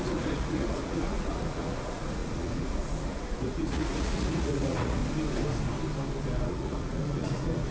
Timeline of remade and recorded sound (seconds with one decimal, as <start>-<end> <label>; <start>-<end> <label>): 0.0-5.0 remade; 5.0-6.5 recorded; 6.5-7.7 remade